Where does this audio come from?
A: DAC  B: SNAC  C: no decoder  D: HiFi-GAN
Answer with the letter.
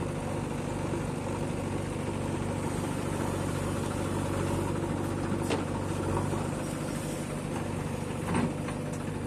C